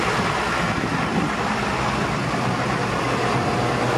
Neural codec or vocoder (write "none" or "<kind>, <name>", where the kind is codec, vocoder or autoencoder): none